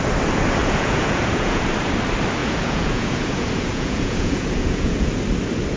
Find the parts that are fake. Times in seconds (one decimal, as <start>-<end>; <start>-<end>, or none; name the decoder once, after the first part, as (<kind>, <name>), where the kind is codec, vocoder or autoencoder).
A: 0.6-1.6 (vocoder, Vocos); 2.4-5.1